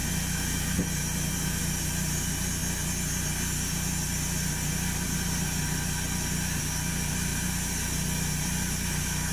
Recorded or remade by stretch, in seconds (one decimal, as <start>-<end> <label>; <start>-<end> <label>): 0.0-9.3 recorded